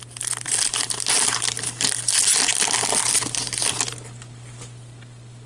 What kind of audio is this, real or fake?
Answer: real